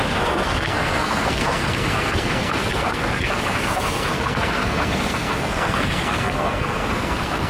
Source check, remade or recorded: remade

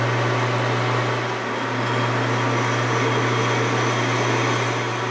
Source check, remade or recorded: recorded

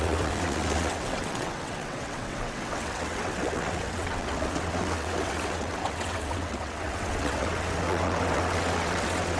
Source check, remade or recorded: remade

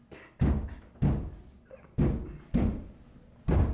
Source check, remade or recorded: recorded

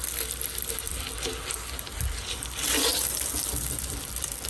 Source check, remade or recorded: recorded